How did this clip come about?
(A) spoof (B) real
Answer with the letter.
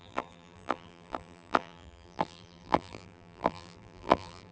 A